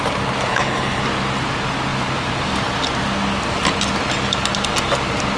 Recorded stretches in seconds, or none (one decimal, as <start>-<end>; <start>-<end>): 0.0-0.5; 1.0-5.4